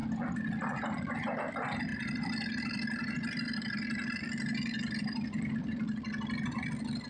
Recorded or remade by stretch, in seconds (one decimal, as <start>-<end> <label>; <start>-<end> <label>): 0.0-1.9 recorded; 1.9-5.5 remade; 5.5-7.1 recorded